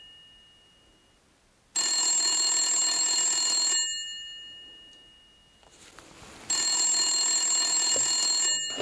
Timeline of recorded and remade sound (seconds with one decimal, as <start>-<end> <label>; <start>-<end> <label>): 0.0-8.8 recorded